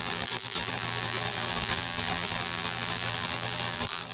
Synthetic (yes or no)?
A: yes